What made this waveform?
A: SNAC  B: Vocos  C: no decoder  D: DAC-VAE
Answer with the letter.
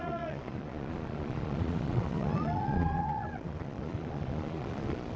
B